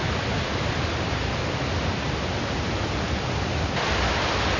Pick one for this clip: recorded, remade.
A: recorded